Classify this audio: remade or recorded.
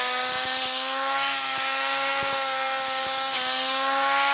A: remade